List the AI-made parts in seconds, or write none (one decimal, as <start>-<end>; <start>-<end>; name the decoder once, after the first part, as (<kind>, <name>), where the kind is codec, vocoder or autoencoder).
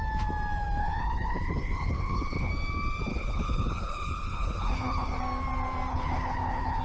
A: 0.8-2.5 (codec, HILCodec); 3.1-5.2; 5.9-6.8